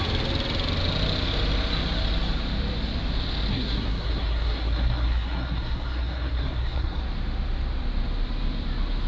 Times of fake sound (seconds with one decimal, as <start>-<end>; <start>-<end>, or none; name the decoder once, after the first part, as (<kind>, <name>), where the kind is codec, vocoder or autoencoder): 3.5-7.0 (codec, SNAC)

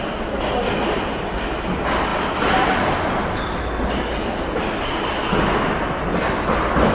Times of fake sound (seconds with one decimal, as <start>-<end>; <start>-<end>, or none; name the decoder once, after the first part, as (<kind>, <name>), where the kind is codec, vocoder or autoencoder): none